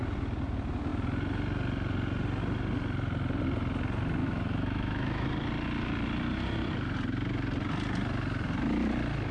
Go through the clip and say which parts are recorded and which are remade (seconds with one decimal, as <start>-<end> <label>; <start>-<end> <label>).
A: 0.0-4.2 recorded; 4.2-5.3 remade; 5.3-9.3 recorded